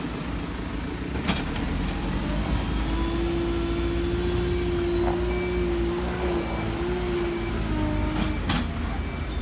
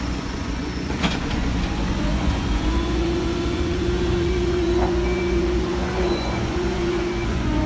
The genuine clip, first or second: first